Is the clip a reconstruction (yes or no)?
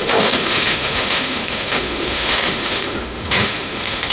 yes